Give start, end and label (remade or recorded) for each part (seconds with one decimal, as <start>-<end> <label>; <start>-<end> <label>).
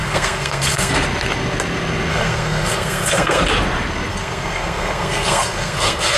0.0-0.9 remade; 0.9-2.1 recorded; 2.1-3.4 remade; 3.4-4.1 recorded; 4.1-6.2 remade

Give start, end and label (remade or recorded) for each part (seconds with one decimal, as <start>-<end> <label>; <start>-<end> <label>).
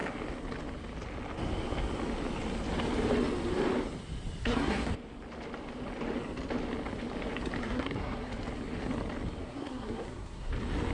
0.0-4.4 recorded; 4.4-4.9 remade; 4.9-7.6 recorded; 7.6-8.3 remade; 8.3-9.4 recorded; 9.4-10.5 remade; 10.5-10.9 recorded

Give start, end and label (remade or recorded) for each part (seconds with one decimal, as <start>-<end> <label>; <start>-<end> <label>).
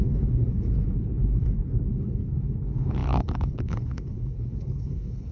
0.0-5.3 remade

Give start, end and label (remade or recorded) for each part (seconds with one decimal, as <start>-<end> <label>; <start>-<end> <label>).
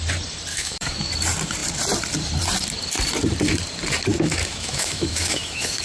0.0-0.5 recorded; 0.5-1.1 remade; 1.1-4.1 recorded; 4.1-5.8 remade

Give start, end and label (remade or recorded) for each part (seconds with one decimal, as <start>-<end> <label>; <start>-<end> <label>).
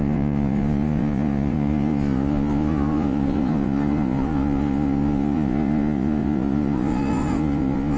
0.0-8.0 remade